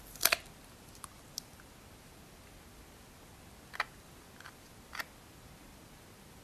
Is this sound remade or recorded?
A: recorded